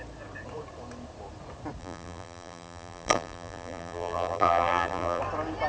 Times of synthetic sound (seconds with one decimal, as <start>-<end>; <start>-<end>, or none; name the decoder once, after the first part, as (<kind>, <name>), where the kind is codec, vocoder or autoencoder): 1.8-5.2 (vocoder, BigVGAN v2)